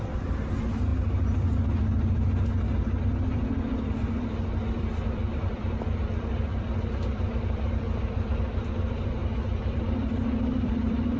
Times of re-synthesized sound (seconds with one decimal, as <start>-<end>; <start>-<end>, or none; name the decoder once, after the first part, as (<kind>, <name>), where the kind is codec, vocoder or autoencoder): 0.0-0.9 (vocoder, BigVGAN v2); 3.0-11.2